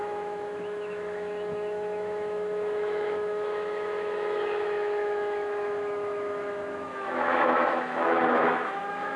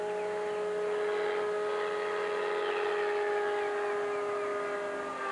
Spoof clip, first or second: first